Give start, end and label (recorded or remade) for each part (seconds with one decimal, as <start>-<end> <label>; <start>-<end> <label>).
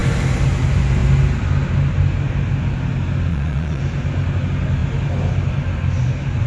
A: 0.0-3.3 recorded; 3.3-3.8 remade; 3.8-6.5 recorded